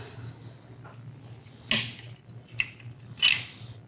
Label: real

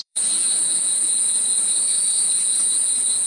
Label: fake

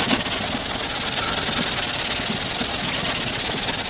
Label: real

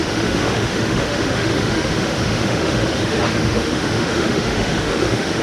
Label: fake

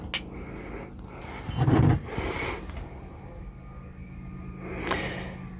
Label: real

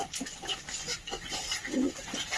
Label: fake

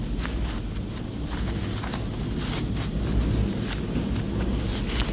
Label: real